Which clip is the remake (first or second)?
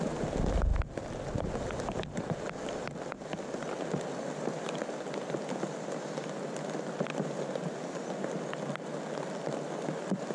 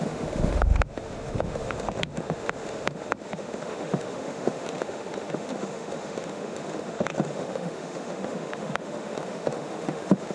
second